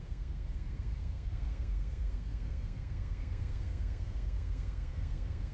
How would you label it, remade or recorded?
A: remade